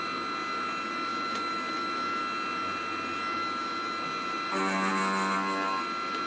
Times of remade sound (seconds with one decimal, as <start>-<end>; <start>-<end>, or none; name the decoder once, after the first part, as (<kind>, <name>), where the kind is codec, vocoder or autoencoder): none

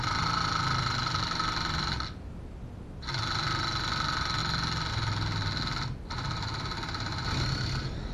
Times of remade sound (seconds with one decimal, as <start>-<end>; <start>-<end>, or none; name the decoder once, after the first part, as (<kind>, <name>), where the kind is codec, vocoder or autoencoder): none